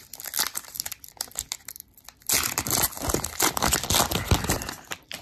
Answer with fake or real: real